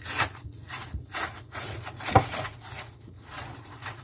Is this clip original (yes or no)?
no